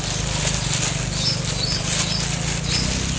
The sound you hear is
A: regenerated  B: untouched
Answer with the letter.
B